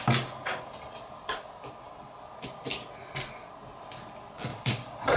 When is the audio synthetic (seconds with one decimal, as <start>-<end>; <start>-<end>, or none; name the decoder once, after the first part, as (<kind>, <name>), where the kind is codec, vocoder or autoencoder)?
4.5-5.2 (vocoder, BigVGAN v2)